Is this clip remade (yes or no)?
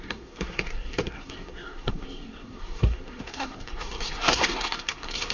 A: yes